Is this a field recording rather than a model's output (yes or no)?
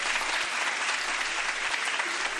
yes